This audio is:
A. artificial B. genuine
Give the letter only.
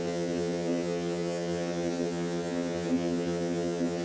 A